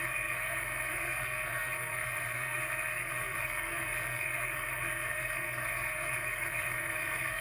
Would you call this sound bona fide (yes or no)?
no